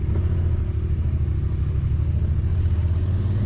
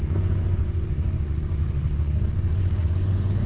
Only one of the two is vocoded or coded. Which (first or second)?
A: second